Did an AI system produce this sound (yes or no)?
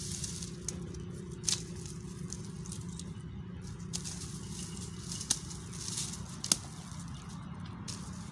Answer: no